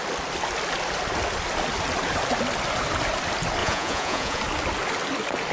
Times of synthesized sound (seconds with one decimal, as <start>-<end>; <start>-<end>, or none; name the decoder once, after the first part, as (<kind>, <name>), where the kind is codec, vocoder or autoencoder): 3.6-4.4 (vocoder, Vocos)